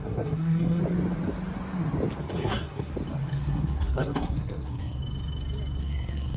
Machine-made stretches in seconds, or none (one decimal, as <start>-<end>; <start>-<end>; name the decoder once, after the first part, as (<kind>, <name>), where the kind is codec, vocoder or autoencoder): 0.0-0.8 (codec, SNAC); 2.2-2.9; 3.4-5.0; 5.8-6.4